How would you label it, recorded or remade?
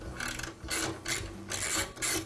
recorded